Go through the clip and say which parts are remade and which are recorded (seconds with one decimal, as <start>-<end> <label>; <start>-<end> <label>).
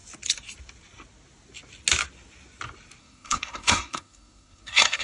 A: 0.0-3.0 recorded; 3.0-5.0 remade